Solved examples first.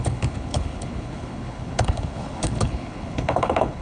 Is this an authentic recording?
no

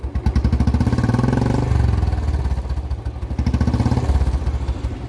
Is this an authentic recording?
yes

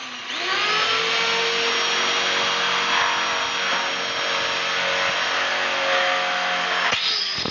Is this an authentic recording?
yes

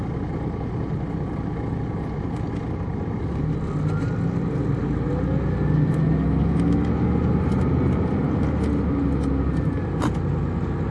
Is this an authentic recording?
yes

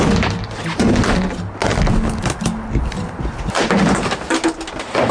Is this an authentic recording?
yes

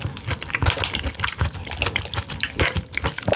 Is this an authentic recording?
yes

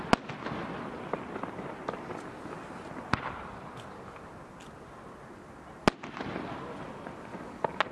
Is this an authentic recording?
yes